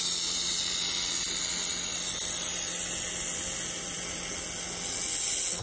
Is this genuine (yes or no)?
yes